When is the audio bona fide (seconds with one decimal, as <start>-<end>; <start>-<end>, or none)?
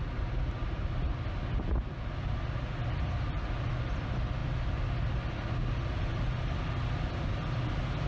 0.0-8.1